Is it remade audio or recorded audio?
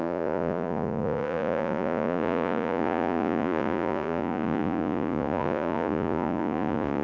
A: remade